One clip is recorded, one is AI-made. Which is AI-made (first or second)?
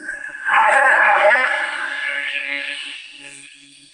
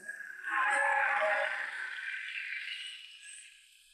first